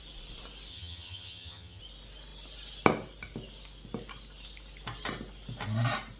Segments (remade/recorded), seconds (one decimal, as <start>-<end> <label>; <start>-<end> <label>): 0.0-0.7 recorded; 0.7-1.8 remade; 1.8-6.2 recorded